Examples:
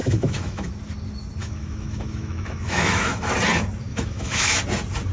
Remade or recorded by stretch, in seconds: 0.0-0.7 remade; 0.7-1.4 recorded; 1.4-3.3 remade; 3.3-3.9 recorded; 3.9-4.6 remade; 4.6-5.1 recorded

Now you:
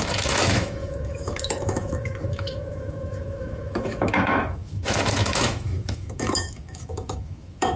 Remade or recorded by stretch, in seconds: 0.0-7.8 remade

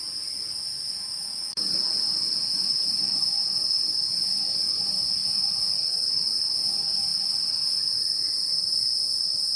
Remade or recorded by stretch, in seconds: 0.0-1.0 recorded; 1.0-1.6 remade; 1.6-9.6 recorded

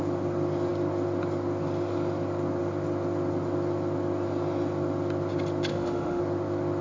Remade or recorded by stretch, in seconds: 0.0-5.7 recorded; 5.7-6.2 remade; 6.2-6.8 recorded

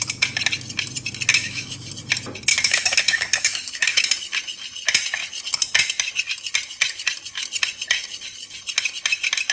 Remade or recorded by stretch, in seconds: 0.0-1.3 recorded; 1.3-1.9 remade; 1.9-2.5 recorded; 2.5-4.1 remade; 4.1-9.5 recorded

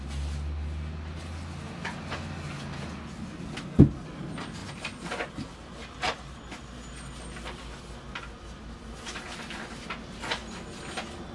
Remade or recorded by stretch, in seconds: 0.0-11.3 recorded

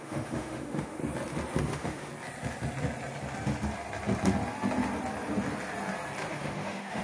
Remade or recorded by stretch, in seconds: 0.0-1.0 remade; 1.0-1.6 recorded; 1.6-2.1 remade; 2.1-6.3 recorded; 6.3-7.0 remade